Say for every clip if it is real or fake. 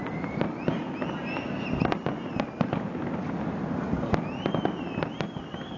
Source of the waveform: real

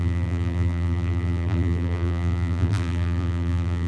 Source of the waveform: fake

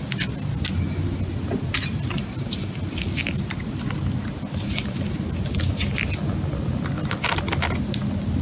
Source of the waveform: real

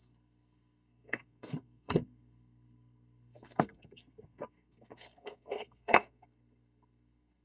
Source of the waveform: fake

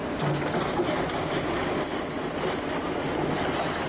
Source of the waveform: real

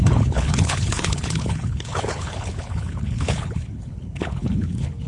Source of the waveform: fake